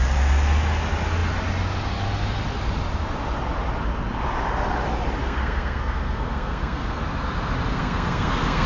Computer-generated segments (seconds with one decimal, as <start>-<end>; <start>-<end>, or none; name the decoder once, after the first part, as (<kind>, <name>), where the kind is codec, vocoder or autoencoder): 5.2-7.0 (codec, SNAC); 7.7-8.7